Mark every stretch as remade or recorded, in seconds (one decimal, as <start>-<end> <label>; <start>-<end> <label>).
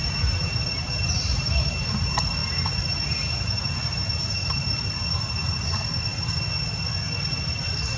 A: 0.0-8.0 recorded